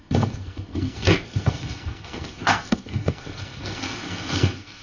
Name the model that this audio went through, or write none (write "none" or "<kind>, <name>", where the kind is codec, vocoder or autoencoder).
codec, SNAC